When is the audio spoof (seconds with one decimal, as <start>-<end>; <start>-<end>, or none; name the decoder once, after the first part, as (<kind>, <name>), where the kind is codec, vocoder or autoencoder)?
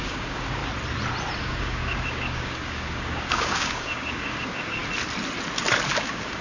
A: 0.0-0.6 (codec, DAC); 1.4-4.8; 5.9-6.4